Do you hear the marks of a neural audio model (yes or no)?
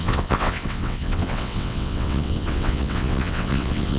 yes